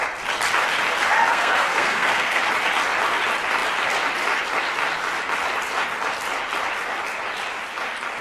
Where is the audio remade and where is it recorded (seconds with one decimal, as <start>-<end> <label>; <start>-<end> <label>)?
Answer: 0.0-1.3 recorded; 1.3-2.4 remade; 2.4-8.2 recorded